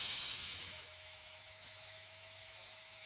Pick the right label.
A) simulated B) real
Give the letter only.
A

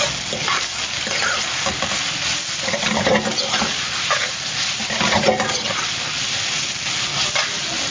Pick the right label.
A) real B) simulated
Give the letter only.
A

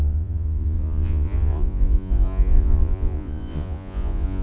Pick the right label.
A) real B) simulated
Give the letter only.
B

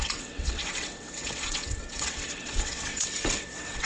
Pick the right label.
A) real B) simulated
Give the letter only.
B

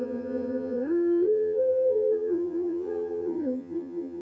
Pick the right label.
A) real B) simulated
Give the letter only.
B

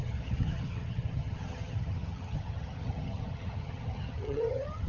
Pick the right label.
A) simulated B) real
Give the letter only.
A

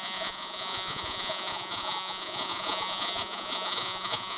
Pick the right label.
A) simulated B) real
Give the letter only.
A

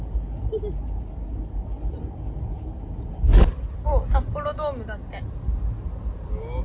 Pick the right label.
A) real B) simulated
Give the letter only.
A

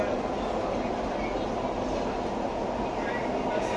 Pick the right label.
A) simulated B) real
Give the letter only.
B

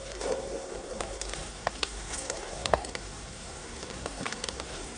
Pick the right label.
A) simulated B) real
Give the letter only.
A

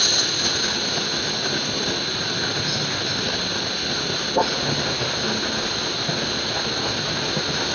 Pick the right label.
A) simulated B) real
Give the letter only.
B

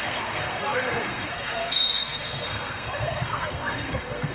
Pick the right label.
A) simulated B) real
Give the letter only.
A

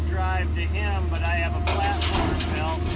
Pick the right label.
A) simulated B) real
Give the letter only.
B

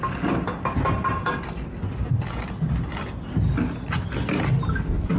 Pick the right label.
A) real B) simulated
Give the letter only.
A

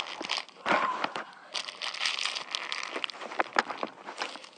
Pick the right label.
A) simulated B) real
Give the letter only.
B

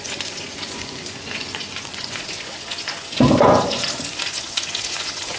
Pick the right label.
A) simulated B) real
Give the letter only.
A